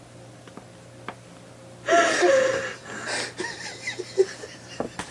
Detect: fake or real real